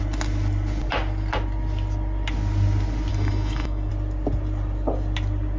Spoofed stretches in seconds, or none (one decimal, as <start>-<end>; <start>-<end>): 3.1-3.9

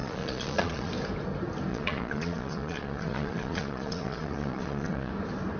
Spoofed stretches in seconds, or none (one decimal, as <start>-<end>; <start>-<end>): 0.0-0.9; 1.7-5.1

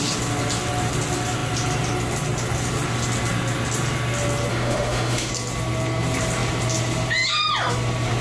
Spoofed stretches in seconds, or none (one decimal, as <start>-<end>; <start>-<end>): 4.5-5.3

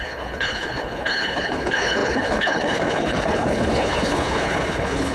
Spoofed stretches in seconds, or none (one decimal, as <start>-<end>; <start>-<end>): 0.0-5.1